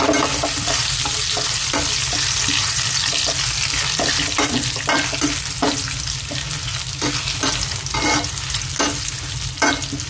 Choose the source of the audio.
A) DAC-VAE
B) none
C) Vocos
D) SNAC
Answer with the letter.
B